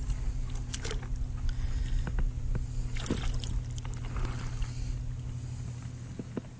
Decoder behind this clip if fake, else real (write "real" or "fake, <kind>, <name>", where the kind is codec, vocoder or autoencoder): real